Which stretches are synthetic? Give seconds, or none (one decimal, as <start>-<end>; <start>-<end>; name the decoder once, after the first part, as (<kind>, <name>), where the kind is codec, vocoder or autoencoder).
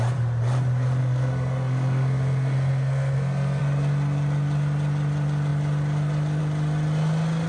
1.0-3.6 (codec, SNAC)